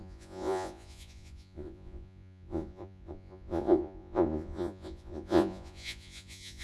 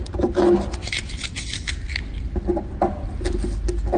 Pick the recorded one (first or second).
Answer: second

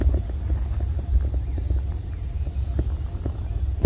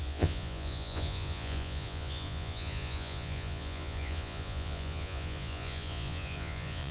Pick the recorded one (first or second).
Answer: first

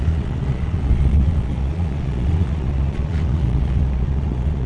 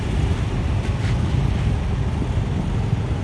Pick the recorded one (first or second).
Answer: second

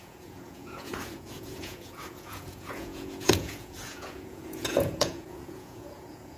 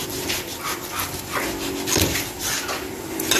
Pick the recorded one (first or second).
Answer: second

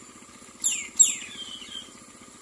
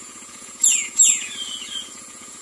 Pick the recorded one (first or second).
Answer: first